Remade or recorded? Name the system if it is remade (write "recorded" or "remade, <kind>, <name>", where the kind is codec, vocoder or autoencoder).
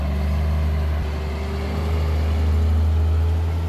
recorded